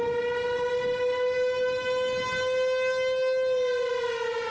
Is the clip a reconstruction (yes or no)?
no